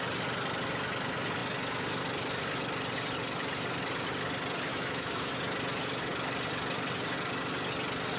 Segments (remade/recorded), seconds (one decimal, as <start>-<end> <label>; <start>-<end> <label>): 0.0-4.7 recorded; 4.7-5.3 remade; 5.3-8.2 recorded